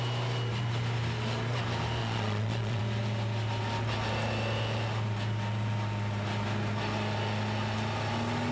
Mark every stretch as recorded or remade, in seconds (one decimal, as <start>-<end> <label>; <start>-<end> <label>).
0.0-2.0 recorded; 2.0-2.8 remade; 2.8-8.5 recorded